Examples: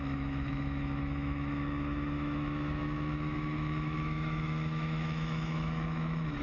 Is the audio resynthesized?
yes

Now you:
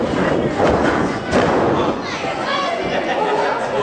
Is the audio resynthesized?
yes